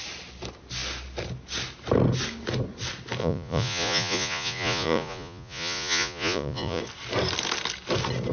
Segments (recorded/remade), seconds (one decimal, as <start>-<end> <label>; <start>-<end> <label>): 0.0-3.2 recorded; 3.2-6.8 remade; 6.8-8.3 recorded